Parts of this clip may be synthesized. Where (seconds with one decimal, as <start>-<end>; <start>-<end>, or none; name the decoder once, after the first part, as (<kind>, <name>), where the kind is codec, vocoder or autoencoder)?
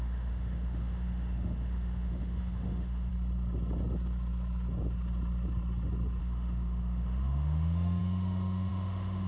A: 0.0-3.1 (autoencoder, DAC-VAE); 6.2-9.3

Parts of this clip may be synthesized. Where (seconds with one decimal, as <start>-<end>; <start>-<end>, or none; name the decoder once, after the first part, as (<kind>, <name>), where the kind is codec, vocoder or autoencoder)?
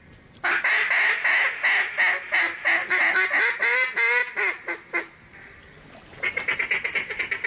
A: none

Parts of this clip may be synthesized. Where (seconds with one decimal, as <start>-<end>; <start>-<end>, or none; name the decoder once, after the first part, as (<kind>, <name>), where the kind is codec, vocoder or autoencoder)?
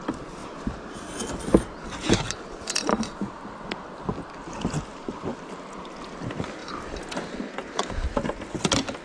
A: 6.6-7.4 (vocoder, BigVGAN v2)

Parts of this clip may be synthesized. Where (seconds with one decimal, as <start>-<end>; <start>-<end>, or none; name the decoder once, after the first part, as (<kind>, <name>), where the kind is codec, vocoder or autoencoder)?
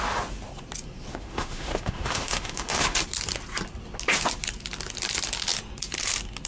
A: 1.1-3.0 (autoencoder, DAC-VAE)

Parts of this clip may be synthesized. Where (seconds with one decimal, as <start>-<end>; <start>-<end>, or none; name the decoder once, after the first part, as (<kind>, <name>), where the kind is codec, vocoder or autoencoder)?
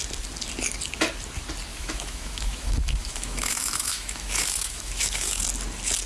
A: 1.7-5.4 (autoencoder, DAC-VAE)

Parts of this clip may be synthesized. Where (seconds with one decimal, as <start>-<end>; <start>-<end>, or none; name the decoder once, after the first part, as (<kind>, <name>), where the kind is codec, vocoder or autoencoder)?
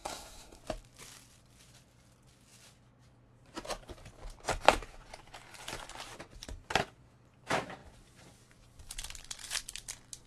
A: 0.0-0.6 (codec, SNAC)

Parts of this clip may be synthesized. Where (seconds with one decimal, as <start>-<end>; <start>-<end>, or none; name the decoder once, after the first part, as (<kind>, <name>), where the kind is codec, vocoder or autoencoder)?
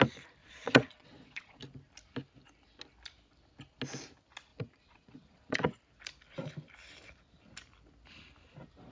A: 0.4-1.6 (vocoder, Vocos); 4.5-5.8